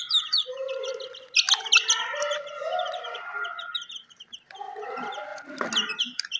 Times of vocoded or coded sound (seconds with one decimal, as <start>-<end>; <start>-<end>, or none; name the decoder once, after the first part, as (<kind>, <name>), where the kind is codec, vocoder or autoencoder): 0.0-0.9 (vocoder, BigVGAN v2); 4.2-5.3; 6.0-6.4